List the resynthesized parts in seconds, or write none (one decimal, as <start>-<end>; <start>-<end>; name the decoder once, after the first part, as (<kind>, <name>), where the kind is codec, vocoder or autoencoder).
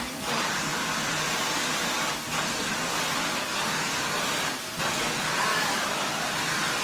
5.5-6.2 (autoencoder, DAC-VAE)